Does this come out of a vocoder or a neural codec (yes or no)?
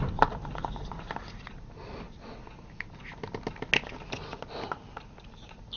no